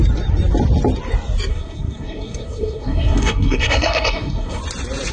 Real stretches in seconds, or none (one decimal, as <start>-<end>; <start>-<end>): 0.0-1.5; 4.6-5.1